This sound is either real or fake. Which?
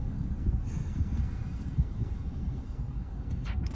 fake